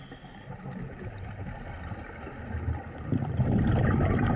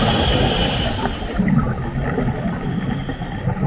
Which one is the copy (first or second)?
second